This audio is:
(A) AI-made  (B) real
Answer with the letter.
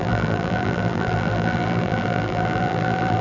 A